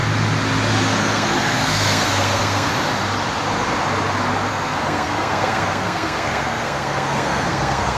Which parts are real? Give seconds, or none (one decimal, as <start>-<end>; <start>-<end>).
0.0-1.0; 2.7-4.5